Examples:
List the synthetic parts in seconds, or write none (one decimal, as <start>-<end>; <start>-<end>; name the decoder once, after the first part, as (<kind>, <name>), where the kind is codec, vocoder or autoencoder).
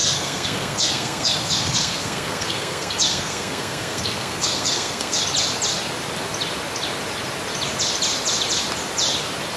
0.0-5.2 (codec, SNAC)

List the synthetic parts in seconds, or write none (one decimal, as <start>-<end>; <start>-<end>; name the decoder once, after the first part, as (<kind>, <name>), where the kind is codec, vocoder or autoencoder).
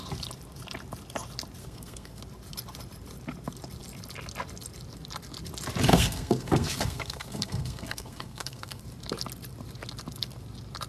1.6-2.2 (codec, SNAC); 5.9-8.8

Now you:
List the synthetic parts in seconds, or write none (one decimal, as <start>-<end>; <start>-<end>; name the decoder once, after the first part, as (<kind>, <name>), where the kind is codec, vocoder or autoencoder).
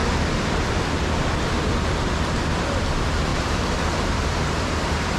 none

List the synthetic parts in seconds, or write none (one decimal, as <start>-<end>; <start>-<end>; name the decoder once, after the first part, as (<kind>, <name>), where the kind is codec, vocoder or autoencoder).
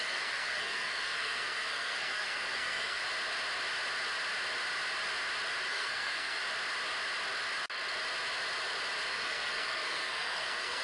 0.0-3.0 (codec, SNAC); 5.7-6.4; 9.1-10.8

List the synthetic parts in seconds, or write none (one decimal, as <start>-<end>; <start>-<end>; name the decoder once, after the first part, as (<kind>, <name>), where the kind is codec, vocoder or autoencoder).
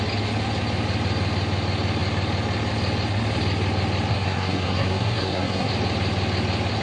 4.1-5.7 (codec, SNAC)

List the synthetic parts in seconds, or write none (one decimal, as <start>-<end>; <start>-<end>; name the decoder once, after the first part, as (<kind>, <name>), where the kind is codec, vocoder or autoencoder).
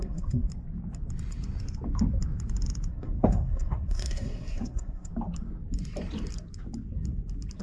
0.0-0.5 (codec, SNAC); 2.9-5.1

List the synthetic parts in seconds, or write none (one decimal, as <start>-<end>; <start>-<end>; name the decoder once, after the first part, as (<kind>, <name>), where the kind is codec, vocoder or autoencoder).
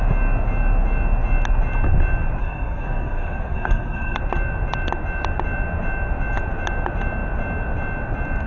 2.4-4.2 (codec, SNAC)